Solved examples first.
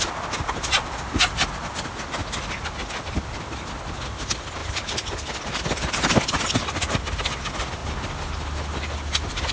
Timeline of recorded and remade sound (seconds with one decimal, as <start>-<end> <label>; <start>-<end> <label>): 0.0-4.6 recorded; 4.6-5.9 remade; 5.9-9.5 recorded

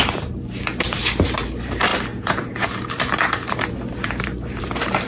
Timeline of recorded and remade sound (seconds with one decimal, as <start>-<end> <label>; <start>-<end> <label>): 0.0-5.1 remade

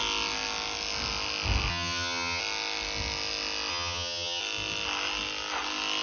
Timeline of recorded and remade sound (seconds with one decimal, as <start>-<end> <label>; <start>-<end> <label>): 0.0-1.7 recorded; 1.7-2.4 remade; 2.4-3.7 recorded; 3.7-4.4 remade; 4.4-6.0 recorded

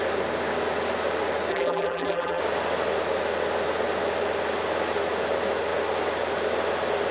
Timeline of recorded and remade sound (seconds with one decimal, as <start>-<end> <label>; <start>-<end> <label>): 0.0-1.5 recorded; 1.5-2.4 remade; 2.4-7.1 recorded

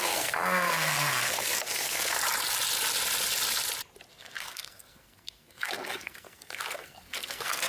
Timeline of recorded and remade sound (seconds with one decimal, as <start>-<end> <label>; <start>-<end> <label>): 0.0-2.2 remade; 2.2-4.1 recorded; 4.1-7.7 remade